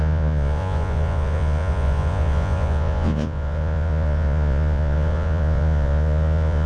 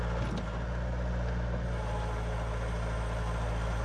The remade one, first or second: first